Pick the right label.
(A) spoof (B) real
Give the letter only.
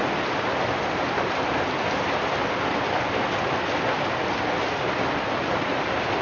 B